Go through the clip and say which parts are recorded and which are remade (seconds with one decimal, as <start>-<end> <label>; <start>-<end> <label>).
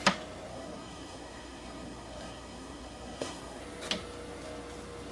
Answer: 0.0-0.5 recorded; 0.5-3.6 remade; 3.6-5.1 recorded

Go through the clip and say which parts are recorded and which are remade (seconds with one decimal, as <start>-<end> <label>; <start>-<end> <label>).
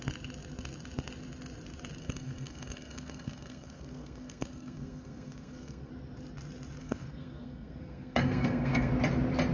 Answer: 0.0-2.0 recorded; 2.0-5.9 remade; 5.9-6.8 recorded; 6.8-8.9 remade; 8.9-9.5 recorded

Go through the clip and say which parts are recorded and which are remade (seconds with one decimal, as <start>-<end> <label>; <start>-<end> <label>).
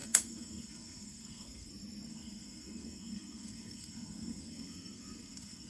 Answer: 0.0-1.7 remade; 1.7-2.1 recorded; 2.1-5.7 remade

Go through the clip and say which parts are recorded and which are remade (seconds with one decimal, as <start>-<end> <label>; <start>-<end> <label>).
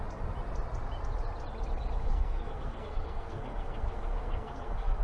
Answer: 0.0-2.0 recorded; 2.0-5.0 remade